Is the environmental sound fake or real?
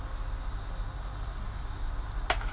real